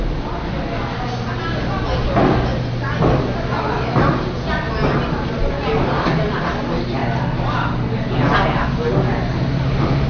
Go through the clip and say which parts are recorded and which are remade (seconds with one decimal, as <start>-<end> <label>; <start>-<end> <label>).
0.0-10.1 recorded